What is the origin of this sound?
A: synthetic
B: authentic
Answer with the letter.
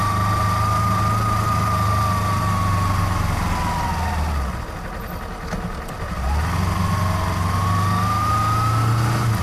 B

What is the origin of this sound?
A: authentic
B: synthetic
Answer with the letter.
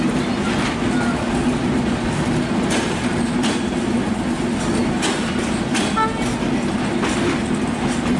A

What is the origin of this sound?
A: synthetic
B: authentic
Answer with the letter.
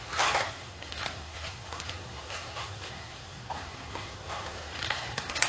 A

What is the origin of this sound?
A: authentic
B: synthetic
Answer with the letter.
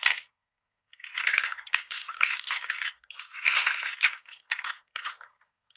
B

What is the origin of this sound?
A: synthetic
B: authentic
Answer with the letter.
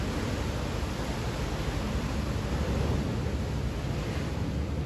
B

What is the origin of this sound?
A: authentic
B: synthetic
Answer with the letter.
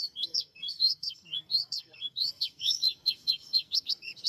B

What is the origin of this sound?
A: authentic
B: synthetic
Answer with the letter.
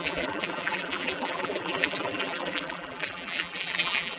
B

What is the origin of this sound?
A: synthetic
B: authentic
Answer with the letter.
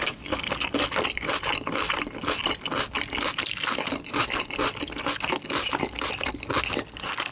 B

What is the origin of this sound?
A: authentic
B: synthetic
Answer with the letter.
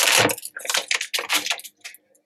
A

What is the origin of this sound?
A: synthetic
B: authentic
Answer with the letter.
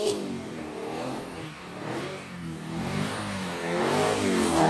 A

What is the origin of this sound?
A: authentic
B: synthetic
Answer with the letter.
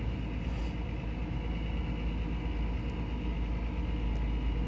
A